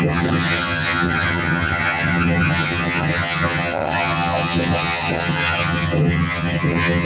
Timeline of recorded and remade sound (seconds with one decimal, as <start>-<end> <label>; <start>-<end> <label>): 0.0-7.0 remade